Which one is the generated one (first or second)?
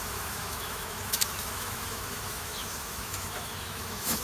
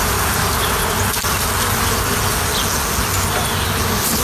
first